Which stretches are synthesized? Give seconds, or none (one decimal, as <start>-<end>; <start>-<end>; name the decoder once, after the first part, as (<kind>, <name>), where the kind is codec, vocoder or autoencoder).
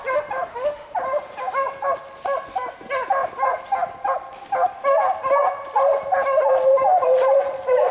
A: 0.5-1.0 (autoencoder, DAC-VAE)